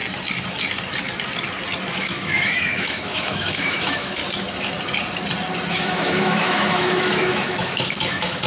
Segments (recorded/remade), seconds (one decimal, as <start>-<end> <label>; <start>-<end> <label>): 0.0-1.9 recorded; 1.9-4.2 remade; 4.2-5.7 recorded; 5.7-8.5 remade